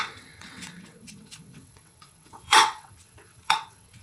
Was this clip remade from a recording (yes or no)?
yes